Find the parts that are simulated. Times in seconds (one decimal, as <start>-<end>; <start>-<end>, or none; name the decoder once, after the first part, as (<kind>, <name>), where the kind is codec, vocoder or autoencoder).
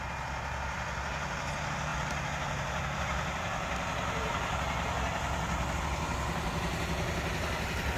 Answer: none